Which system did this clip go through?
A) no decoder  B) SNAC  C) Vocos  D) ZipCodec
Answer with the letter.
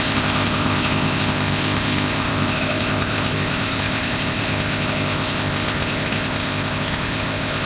D